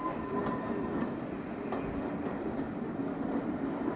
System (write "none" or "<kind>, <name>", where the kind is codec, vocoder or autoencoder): vocoder, BigVGAN v2